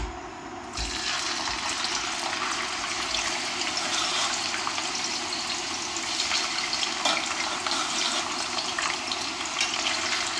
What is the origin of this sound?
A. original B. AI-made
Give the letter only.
A